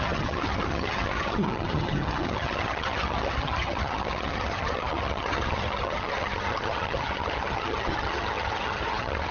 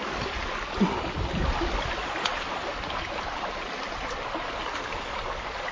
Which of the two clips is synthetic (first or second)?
first